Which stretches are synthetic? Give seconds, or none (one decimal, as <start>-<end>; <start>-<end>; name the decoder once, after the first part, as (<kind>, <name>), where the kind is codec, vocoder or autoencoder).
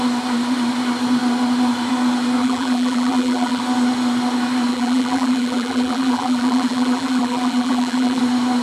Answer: 2.4-3.6 (vocoder, BigVGAN v2); 4.7-8.2